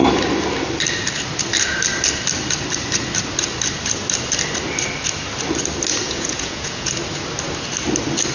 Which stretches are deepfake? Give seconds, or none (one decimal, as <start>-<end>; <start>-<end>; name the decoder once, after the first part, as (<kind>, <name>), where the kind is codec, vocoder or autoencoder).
6.0-6.9 (vocoder, Vocos)